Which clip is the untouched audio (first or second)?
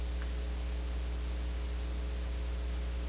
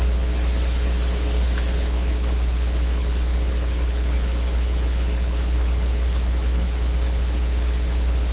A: first